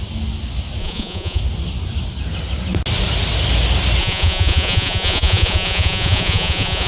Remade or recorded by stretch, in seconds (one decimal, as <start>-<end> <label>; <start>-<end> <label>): 0.0-0.8 recorded; 0.8-1.4 remade; 1.4-4.0 recorded; 4.0-6.9 remade